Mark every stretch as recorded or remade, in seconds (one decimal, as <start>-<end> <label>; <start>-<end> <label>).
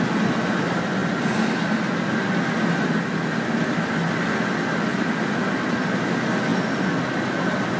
0.0-7.8 recorded